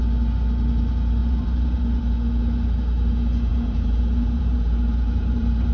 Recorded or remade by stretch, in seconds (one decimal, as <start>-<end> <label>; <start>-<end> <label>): 0.0-1.2 recorded; 1.2-2.0 remade; 2.0-3.5 recorded; 3.5-5.7 remade